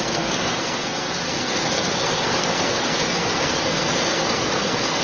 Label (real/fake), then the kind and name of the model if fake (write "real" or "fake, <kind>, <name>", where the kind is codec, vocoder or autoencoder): fake, codec, SNAC